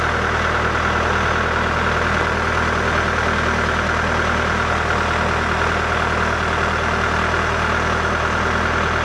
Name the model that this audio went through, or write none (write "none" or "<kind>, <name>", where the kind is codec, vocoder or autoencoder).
none